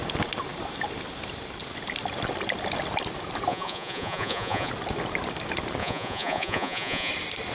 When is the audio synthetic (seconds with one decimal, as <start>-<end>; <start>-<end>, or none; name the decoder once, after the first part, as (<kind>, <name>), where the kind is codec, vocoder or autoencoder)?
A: 3.5-4.7 (vocoder, Vocos); 5.8-7.1

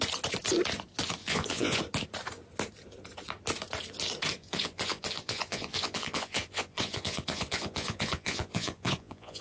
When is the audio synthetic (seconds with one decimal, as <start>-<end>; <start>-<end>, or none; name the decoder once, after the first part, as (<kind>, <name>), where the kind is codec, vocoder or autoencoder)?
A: 1.2-1.8 (vocoder, Vocos); 4.4-9.4

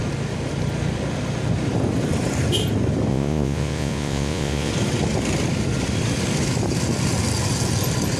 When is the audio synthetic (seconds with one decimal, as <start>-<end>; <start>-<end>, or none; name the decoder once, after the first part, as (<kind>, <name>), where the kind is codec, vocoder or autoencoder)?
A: 3.1-4.7 (vocoder, Vocos)

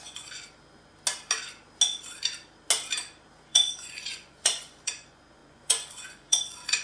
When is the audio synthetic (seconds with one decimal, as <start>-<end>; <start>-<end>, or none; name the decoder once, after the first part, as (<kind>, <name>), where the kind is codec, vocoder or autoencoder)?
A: 0.0-0.9 (vocoder, Vocos); 3.3-6.8

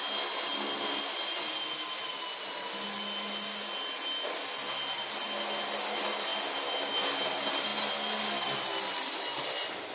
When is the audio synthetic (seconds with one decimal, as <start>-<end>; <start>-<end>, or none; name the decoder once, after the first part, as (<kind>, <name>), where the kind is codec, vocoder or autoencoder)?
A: none